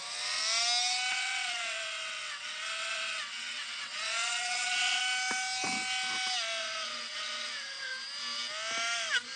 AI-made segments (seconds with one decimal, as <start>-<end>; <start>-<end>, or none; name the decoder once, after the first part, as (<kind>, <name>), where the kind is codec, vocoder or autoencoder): 0.0-0.4 (vocoder, WaveNeXt); 1.1-5.0; 6.6-7.9